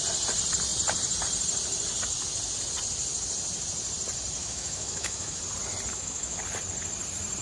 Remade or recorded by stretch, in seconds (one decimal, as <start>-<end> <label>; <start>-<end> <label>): 0.0-4.4 recorded; 4.4-5.4 remade; 5.4-5.9 recorded; 5.9-6.4 remade; 6.4-7.4 recorded